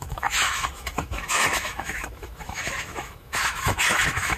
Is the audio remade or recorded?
remade